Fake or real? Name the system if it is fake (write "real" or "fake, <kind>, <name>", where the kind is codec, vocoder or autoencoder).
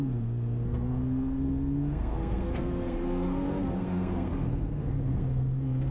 fake, codec, SNAC